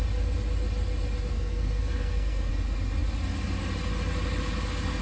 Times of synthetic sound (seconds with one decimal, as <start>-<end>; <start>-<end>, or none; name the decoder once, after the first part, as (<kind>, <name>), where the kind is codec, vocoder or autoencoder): 1.3-2.5 (codec, SNAC)